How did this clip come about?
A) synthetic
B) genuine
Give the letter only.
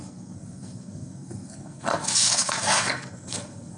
A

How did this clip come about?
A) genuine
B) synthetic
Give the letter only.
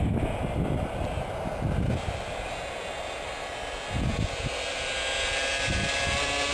A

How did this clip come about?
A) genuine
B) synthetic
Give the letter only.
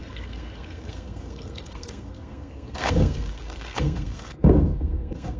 B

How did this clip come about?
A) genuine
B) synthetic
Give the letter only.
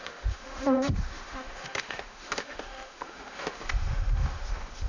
B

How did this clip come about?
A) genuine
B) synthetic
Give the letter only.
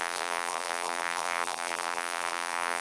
B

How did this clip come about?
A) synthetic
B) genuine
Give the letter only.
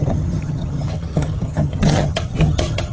A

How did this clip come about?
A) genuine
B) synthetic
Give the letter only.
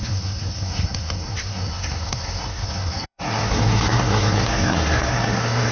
B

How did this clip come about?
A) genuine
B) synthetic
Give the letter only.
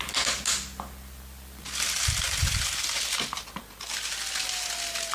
A